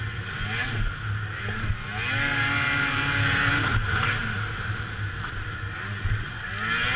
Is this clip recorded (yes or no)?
yes